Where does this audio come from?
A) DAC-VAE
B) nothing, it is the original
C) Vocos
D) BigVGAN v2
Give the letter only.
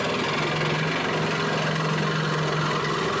B